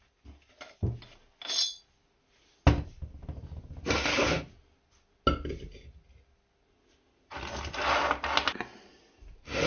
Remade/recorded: recorded